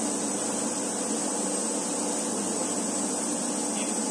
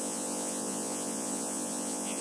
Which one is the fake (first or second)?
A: second